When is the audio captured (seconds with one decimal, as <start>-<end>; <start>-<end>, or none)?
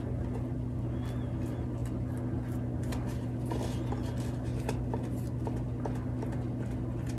0.0-7.2